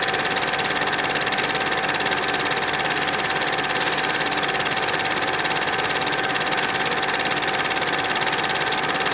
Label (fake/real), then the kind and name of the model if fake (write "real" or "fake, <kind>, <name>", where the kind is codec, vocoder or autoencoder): real